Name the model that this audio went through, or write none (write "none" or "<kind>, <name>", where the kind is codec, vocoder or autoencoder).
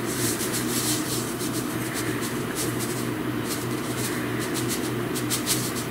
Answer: vocoder, BigVGAN v2